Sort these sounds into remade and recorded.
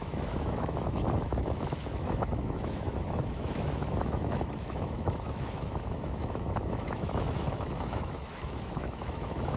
remade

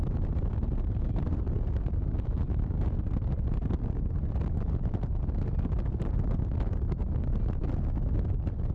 recorded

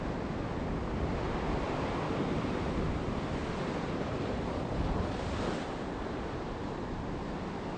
recorded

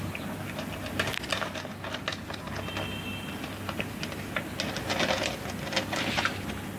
recorded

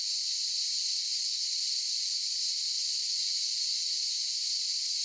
recorded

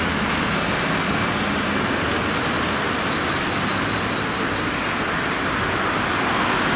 recorded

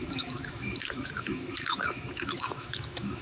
remade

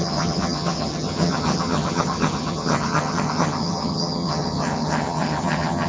remade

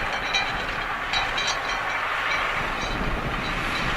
recorded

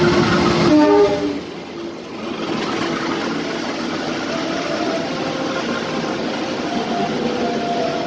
recorded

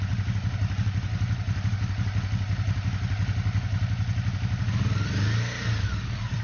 recorded